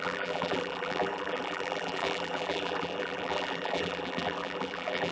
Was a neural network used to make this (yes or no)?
yes